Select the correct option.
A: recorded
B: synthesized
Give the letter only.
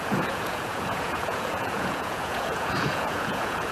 B